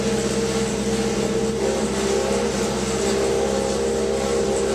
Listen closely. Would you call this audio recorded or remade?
recorded